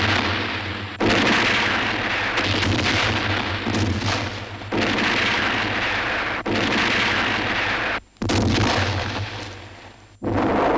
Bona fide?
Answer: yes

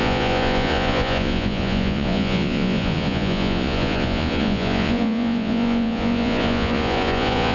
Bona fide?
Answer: no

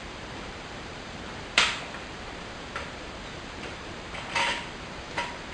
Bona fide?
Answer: no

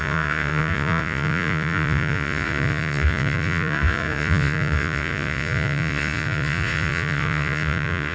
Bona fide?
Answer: no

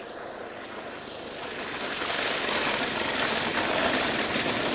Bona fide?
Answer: yes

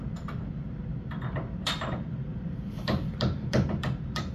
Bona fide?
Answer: no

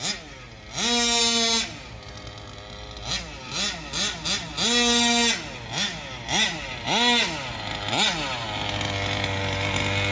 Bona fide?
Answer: yes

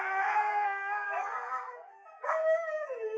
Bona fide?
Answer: no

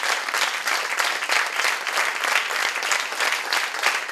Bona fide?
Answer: yes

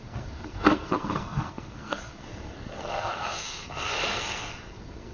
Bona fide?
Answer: no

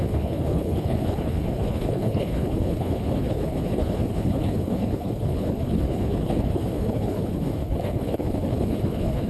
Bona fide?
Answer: no